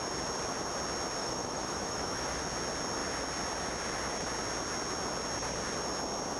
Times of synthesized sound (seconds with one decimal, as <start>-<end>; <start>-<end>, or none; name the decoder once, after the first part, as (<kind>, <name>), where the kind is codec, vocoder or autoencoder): 1.2-2.4 (autoencoder, DAC-VAE)